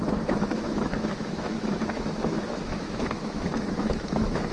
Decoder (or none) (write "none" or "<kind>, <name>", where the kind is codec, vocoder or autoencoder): autoencoder, DAC-VAE